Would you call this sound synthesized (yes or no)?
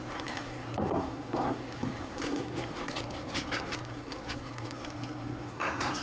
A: yes